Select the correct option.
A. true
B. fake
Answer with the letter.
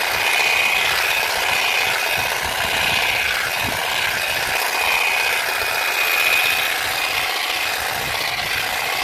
A